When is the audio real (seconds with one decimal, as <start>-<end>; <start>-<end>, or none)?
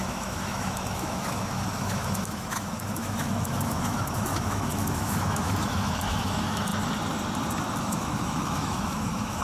6.7-7.8